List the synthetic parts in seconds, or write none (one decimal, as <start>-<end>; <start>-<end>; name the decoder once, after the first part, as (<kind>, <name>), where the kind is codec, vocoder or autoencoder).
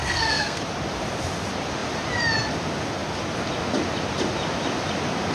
0.0-0.6 (codec, SNAC)